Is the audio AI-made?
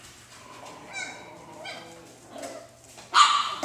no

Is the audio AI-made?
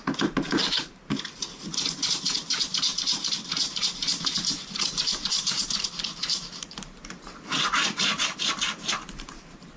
yes